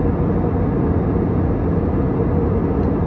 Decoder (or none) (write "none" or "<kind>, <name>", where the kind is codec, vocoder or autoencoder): none